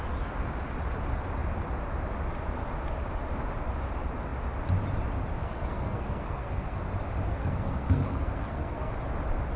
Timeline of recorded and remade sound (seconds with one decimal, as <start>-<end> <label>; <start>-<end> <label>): 0.0-5.4 recorded; 5.4-6.8 remade; 6.8-7.3 recorded; 7.3-8.9 remade; 8.9-9.6 recorded